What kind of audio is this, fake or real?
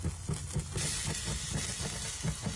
real